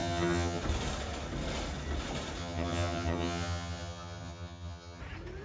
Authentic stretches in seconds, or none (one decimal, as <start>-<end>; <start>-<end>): 0.6-2.4; 5.0-5.4